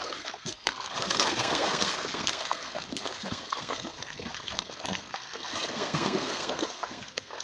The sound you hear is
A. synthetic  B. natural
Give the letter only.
A